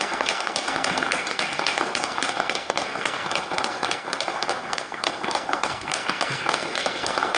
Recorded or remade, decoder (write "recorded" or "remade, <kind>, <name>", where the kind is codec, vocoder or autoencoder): remade, codec, SNAC